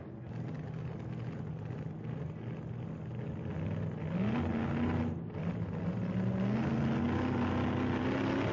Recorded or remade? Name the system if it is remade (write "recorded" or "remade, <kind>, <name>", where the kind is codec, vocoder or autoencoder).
recorded